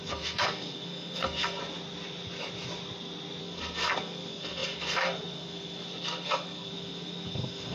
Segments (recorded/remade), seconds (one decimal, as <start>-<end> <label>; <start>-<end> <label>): 0.0-1.6 remade; 1.6-3.4 recorded; 3.4-7.7 remade